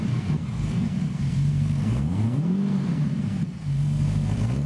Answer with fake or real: fake